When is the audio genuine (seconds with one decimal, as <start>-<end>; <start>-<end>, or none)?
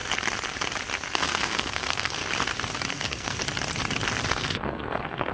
0.0-1.1; 2.2-2.9; 3.4-4.3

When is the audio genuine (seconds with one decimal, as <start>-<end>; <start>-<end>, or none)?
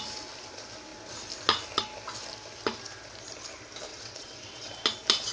0.0-3.9; 4.7-5.3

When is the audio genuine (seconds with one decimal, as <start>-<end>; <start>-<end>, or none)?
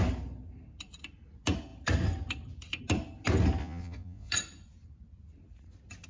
0.0-3.6; 4.3-6.1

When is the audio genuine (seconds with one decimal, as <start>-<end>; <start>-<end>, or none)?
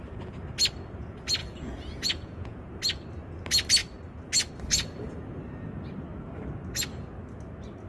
0.0-1.4; 2.8-7.9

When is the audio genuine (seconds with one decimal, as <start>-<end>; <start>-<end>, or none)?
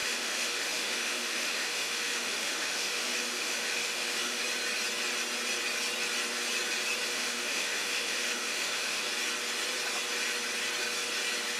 4.4-7.1; 9.0-11.6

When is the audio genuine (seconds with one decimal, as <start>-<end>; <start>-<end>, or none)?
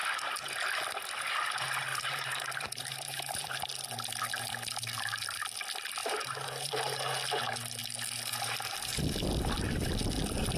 0.0-1.9; 3.6-6.0; 7.0-10.6